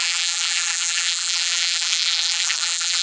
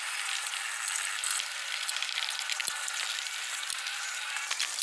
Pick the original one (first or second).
second